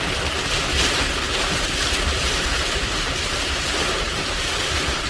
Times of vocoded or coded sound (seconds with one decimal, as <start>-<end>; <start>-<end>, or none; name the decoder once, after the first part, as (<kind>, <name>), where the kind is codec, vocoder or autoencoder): 2.1-5.1 (vocoder, BigVGAN v2)